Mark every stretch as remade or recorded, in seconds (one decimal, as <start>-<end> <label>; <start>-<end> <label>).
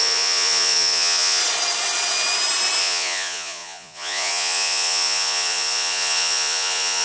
0.0-1.4 remade; 1.4-2.8 recorded; 2.8-7.0 remade